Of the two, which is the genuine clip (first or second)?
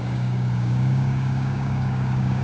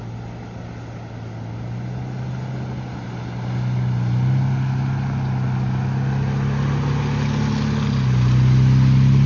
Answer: second